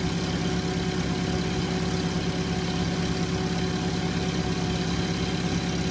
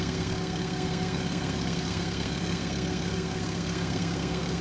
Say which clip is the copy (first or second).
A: second